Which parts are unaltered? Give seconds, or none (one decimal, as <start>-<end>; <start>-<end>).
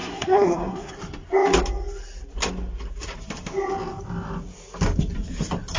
0.9-5.8